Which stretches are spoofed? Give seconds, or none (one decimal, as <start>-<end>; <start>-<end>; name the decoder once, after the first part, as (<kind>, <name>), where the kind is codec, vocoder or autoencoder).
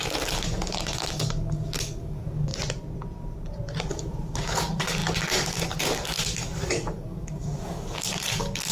0.0-2.5 (codec, DAC); 3.9-8.7